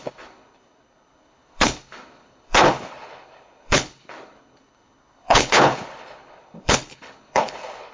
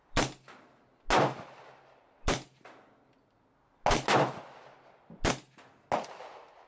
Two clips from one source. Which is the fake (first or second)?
first